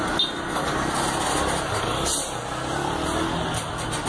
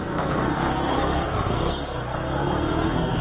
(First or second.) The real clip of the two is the first